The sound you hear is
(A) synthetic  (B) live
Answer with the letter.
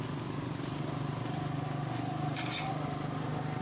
B